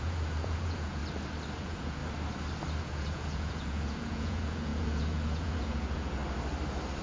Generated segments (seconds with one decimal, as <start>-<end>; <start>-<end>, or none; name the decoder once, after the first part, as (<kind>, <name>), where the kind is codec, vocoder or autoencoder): 0.0-1.0 (vocoder, Vocos); 1.6-2.0; 2.8-6.2